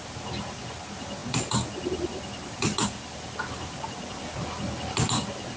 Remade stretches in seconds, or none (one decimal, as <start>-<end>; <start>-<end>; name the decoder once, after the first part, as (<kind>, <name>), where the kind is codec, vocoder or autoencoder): none